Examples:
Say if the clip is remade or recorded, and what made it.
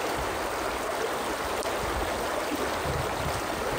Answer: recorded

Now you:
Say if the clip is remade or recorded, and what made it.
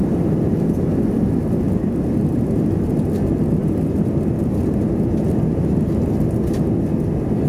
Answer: recorded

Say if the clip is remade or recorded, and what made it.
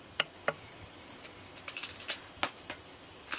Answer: recorded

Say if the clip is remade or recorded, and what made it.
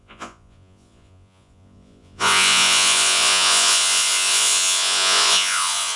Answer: remade, vocoder, Vocos